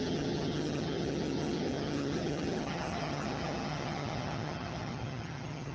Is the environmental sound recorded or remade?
remade